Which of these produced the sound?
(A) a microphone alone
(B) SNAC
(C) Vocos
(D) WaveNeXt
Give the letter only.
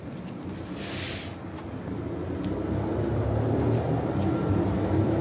A